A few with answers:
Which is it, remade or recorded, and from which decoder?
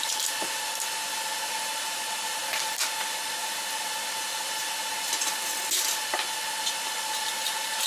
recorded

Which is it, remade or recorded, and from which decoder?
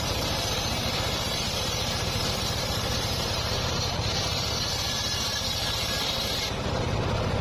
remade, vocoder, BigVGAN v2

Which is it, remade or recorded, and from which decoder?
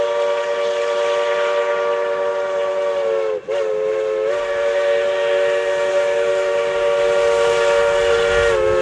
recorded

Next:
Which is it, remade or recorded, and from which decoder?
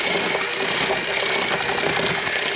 recorded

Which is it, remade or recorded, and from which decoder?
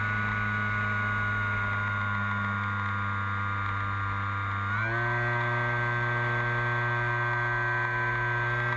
recorded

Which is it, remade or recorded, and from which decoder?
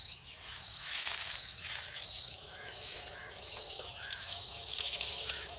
remade, autoencoder, DAC-VAE